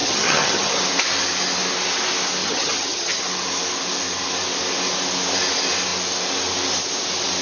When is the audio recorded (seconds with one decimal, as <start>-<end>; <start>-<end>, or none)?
0.8-2.4; 3.2-7.4